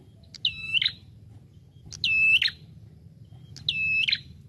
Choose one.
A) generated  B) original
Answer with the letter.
B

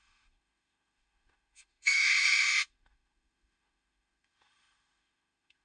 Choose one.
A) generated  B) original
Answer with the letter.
A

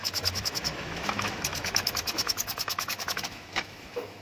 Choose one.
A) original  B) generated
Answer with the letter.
B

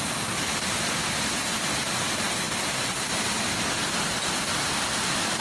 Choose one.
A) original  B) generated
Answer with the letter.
A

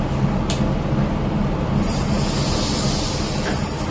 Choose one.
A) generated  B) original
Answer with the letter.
B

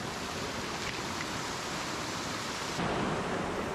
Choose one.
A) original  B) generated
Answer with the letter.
A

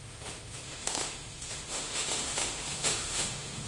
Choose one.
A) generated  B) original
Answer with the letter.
A